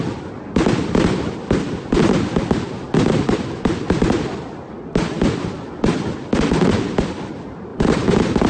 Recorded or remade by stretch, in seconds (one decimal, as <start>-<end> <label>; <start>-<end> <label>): 0.0-8.5 recorded